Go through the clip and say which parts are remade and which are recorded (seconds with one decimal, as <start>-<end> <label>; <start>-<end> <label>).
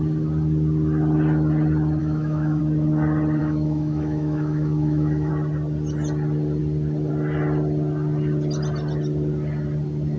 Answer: 0.0-2.0 recorded; 2.0-2.6 remade; 2.6-3.4 recorded; 3.4-5.3 remade; 5.3-10.2 recorded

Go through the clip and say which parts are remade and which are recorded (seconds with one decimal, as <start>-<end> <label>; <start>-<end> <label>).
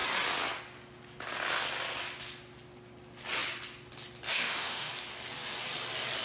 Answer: 0.0-4.3 recorded; 4.3-4.9 remade; 4.9-6.2 recorded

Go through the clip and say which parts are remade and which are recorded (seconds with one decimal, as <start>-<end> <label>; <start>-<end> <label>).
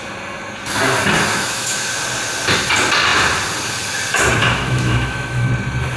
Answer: 0.0-1.3 recorded; 1.3-1.9 remade; 1.9-4.4 recorded; 4.4-5.5 remade; 5.5-6.0 recorded